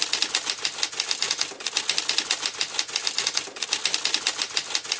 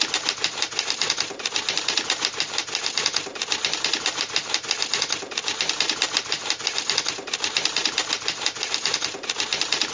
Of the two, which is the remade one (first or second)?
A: second